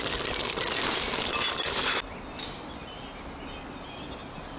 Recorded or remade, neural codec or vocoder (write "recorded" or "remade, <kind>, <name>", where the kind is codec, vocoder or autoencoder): recorded